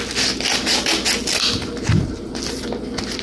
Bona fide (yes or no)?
yes